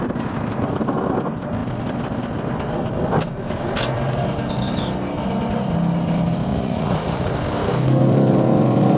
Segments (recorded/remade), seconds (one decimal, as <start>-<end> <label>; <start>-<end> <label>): 0.0-6.5 recorded; 6.5-7.3 remade; 7.3-9.0 recorded